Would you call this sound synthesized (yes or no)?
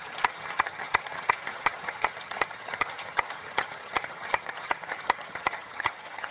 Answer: yes